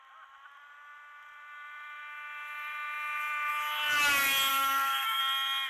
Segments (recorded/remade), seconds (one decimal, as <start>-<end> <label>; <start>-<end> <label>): 0.0-4.5 recorded; 4.5-5.2 remade; 5.2-5.7 recorded